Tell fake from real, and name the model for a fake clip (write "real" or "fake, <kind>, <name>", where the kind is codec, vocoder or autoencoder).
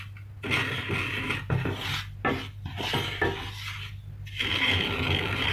real